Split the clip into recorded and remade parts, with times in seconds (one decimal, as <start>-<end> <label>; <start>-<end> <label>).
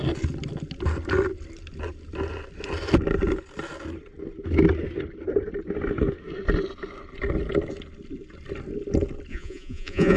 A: 0.0-9.3 recorded; 9.3-10.2 remade